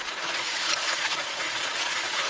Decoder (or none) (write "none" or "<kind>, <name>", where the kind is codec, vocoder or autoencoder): vocoder, Vocos